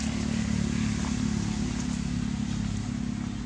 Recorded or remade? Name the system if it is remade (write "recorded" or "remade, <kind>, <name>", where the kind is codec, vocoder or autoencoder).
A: recorded